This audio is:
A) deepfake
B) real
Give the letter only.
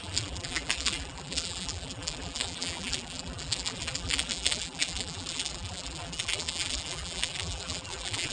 A